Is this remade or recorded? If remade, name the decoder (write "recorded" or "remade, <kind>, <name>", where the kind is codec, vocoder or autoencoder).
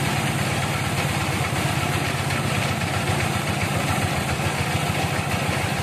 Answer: remade, vocoder, BigVGAN v2